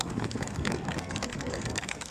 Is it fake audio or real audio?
fake